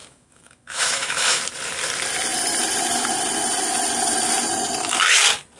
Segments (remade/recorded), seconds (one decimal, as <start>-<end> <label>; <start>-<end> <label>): 0.0-1.4 remade; 1.4-5.6 recorded